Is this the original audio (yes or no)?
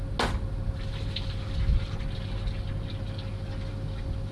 yes